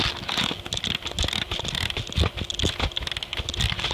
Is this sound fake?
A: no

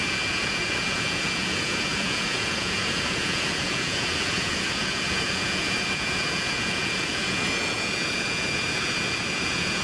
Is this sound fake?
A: yes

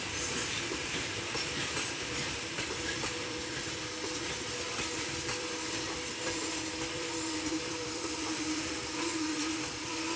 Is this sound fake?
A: yes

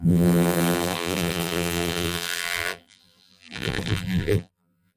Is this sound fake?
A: yes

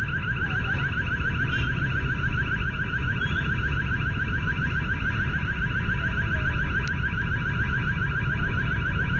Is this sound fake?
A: no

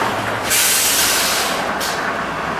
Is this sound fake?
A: no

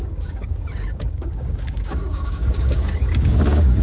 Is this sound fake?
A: yes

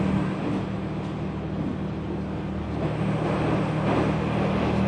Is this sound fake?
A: no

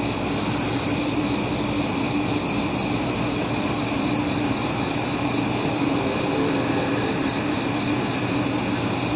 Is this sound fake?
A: no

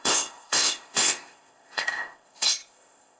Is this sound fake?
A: yes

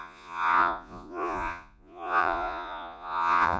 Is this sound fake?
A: yes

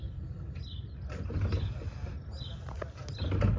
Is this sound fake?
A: no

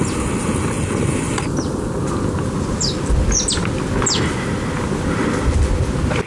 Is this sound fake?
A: no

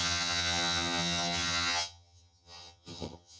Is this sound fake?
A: yes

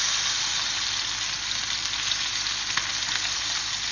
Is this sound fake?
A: no